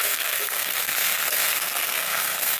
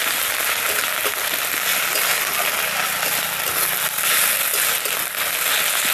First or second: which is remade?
first